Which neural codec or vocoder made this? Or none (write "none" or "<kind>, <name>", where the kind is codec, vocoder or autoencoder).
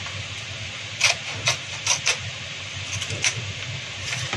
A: none